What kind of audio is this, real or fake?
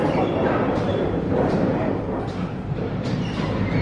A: fake